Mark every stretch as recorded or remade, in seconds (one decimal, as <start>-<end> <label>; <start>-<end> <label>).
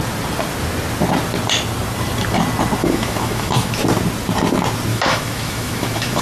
0.0-2.8 recorded; 2.8-3.7 remade; 3.7-4.9 recorded; 4.9-6.2 remade